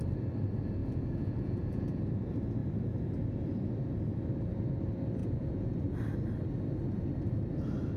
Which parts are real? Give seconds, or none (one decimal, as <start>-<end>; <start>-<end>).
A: 0.0-0.8; 2.0-5.2; 5.7-8.0